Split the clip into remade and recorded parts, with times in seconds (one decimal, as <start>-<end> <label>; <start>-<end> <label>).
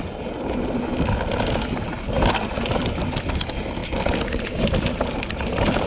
0.0-5.9 recorded